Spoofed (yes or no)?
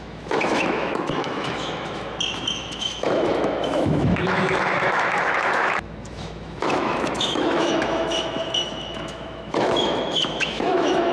yes